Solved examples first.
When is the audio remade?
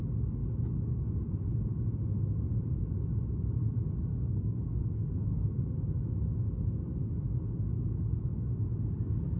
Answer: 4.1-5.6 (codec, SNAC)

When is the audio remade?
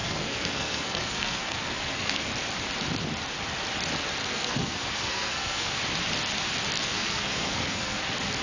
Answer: 0.0-2.3 (codec, SNAC); 4.2-5.8; 6.8-8.0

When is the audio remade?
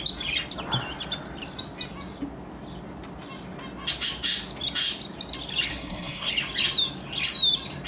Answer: 5.7-6.3 (codec, SNAC)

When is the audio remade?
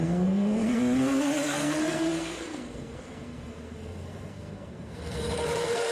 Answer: 0.0-5.9 (codec, SNAC)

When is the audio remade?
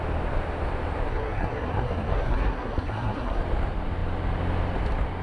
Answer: 1.1-3.4 (codec, SNAC)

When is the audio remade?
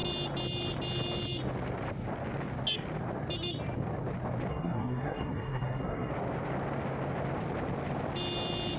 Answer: 4.5-6.1 (codec, SNAC)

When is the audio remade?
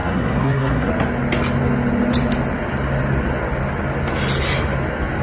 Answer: 0.0-0.9 (codec, SNAC)